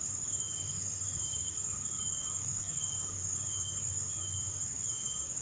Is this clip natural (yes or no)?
no